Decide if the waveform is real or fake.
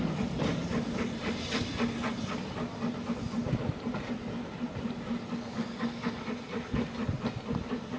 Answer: real